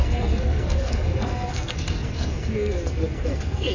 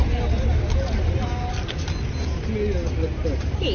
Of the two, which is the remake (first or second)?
first